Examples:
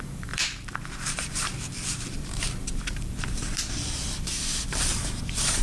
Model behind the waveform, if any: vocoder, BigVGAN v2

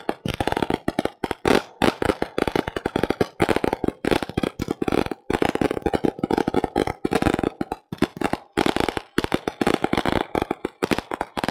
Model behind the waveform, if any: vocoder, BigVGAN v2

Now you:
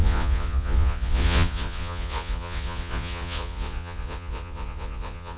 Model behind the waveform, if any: vocoder, Vocos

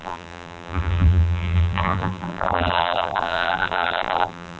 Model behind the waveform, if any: vocoder, BigVGAN v2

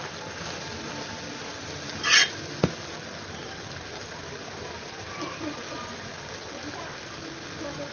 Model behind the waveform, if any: none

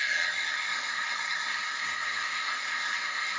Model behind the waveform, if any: codec, SNAC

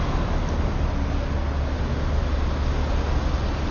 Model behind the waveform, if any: none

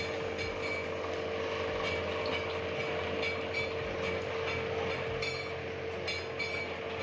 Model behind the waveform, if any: none